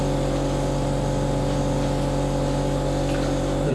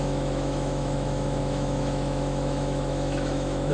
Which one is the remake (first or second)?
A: second